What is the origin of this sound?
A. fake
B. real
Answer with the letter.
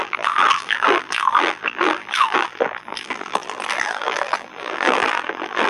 A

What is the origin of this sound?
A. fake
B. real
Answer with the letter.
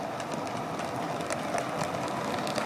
B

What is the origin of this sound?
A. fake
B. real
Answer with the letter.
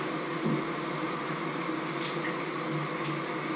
B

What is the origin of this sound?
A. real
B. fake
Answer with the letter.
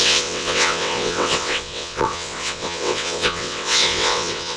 B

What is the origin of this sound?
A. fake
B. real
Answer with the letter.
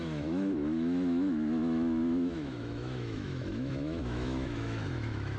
A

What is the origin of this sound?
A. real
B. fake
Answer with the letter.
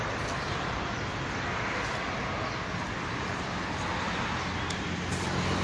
A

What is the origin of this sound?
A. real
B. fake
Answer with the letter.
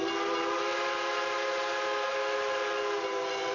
A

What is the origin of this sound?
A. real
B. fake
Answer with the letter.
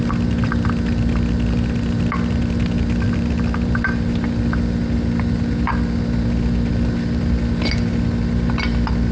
A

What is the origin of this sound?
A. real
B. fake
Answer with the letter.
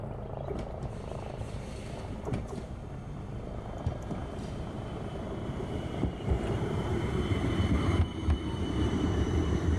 B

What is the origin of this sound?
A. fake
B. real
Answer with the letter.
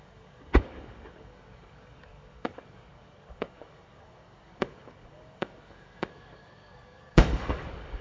A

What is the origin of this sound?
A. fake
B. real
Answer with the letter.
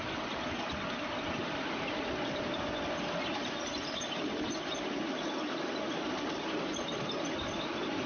B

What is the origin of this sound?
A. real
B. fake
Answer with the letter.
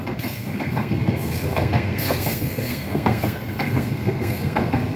B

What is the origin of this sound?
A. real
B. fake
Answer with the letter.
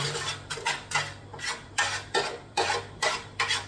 B